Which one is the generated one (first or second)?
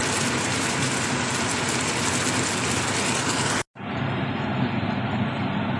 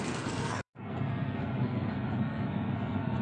second